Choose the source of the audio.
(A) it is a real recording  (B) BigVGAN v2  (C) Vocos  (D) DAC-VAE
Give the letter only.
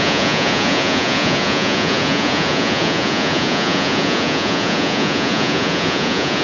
C